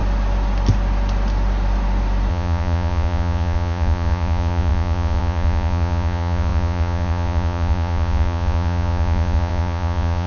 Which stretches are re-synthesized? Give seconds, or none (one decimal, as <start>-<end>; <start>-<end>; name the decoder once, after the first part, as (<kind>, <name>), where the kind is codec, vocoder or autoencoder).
2.3-10.3 (vocoder, Vocos)